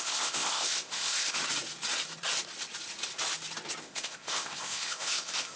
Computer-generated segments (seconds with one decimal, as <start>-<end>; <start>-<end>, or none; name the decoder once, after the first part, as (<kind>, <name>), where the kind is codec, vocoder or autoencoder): 0.0-1.4 (codec, ZipCodec); 3.8-5.6